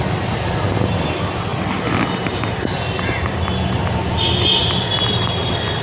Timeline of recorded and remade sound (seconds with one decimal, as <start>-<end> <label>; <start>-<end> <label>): 0.0-5.8 recorded